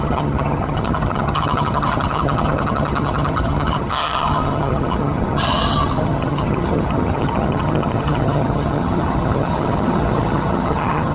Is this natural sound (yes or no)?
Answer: no